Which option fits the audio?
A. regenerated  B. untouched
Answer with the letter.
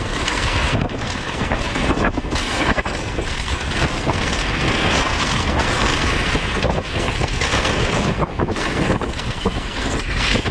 A